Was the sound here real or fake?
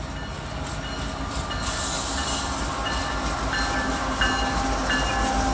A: real